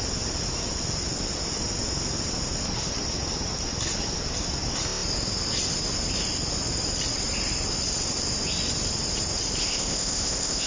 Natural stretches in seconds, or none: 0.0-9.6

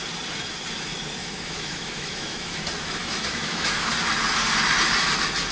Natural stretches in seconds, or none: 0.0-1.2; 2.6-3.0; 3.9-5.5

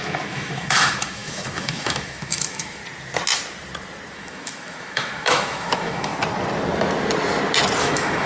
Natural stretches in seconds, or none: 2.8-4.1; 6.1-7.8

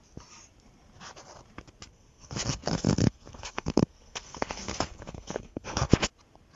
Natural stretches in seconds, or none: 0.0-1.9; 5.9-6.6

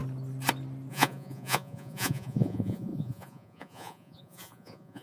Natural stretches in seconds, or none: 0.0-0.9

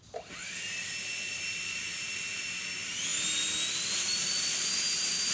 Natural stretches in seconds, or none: 0.0-5.3

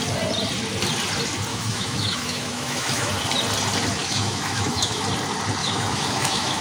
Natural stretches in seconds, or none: 0.0-1.5; 3.1-4.0; 5.0-5.6

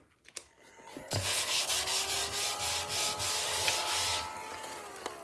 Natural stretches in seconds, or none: 0.0-0.9; 1.7-5.2